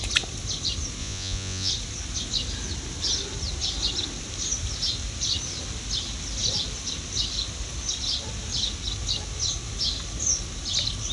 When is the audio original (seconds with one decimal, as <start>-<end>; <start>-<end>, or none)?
0.0-1.0; 1.7-11.1